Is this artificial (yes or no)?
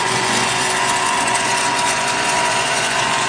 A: yes